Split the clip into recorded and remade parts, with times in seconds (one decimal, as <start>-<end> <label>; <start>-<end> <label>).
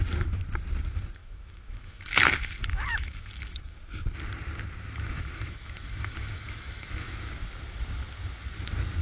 0.0-1.2 recorded; 1.2-3.7 remade; 3.7-5.1 recorded; 5.1-7.1 remade; 7.1-9.0 recorded